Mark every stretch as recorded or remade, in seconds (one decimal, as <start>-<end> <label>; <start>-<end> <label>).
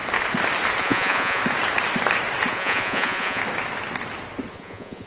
0.0-0.8 recorded; 0.8-1.4 remade; 1.4-2.5 recorded; 2.5-3.4 remade; 3.4-4.5 recorded; 4.5-5.1 remade